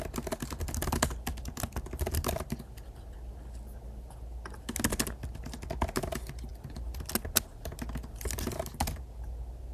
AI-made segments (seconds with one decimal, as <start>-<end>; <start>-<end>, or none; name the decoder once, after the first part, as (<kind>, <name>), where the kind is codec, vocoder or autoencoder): none